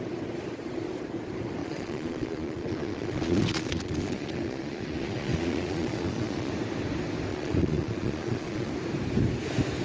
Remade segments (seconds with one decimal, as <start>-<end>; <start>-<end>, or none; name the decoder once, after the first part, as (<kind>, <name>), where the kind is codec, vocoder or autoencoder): 1.6-6.5 (vocoder, Vocos); 7.3-8.7